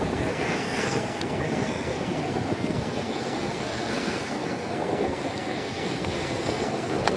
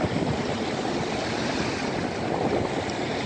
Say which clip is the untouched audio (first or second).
second